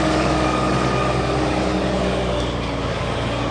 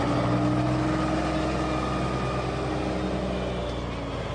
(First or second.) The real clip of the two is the second